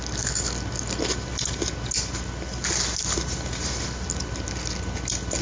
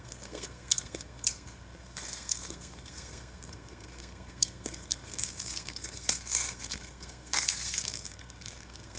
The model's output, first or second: second